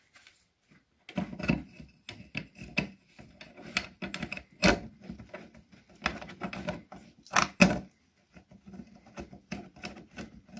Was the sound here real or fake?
real